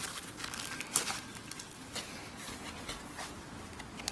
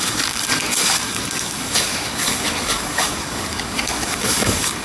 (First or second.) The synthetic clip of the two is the second